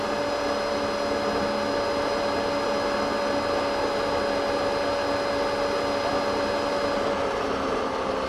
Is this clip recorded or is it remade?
recorded